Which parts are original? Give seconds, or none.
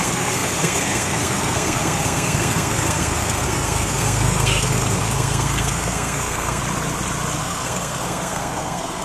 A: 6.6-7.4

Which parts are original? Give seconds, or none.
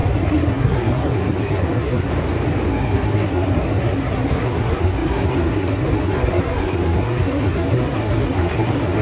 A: 2.1-2.7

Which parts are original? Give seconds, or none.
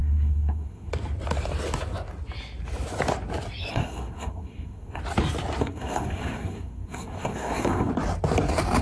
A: 0.9-3.7; 5.0-5.6; 7.9-8.8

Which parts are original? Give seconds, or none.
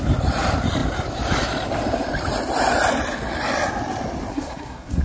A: 0.0-4.3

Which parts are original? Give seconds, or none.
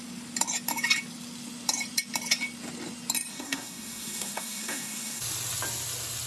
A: 0.0-3.3; 5.2-6.3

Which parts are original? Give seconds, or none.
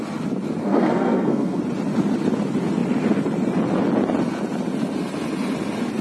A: 0.0-0.6; 1.6-6.0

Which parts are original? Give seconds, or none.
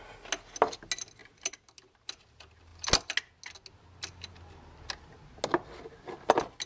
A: 0.0-6.7